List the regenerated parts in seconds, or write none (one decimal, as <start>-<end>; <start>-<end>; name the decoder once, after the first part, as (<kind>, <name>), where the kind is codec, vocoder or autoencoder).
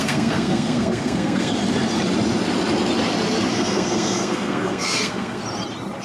0.0-1.6 (codec, SNAC); 3.5-5.4